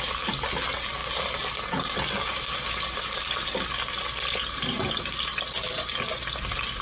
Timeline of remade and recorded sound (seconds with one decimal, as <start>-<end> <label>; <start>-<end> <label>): 0.0-6.8 recorded